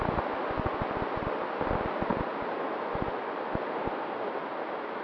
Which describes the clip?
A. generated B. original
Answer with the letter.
B